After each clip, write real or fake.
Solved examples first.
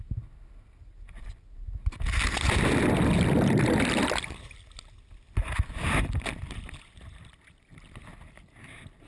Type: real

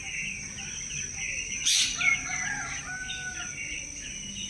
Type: real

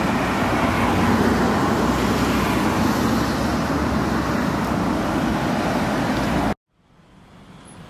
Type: real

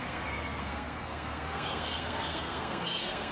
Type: fake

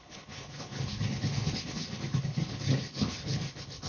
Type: fake